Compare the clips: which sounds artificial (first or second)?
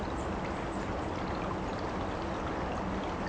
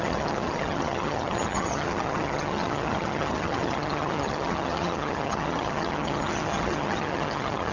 second